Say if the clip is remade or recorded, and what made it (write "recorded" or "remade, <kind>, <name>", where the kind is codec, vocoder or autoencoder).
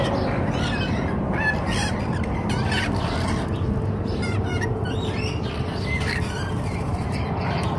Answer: remade, vocoder, BigVGAN v2